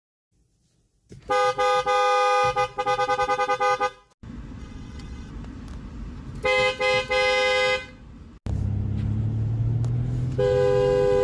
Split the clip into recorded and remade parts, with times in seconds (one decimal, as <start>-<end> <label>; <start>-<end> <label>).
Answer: 0.0-4.6 recorded; 4.6-5.3 remade; 5.3-11.2 recorded